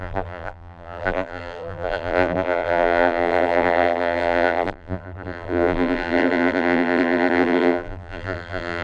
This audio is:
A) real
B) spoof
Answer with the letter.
B